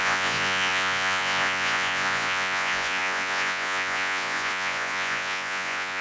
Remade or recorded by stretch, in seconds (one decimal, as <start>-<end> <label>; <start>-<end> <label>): 0.0-6.0 remade